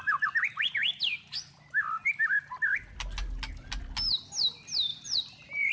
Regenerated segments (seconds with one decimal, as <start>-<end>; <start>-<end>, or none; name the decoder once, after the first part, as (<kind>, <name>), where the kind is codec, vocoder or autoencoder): 4.9-5.7 (vocoder, BigVGAN v2)